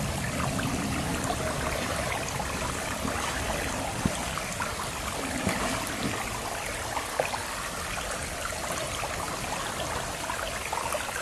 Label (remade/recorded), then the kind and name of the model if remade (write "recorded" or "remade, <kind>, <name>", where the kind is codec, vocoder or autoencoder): recorded